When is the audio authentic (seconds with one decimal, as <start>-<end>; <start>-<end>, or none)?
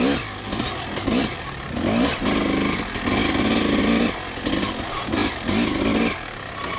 0.0-6.8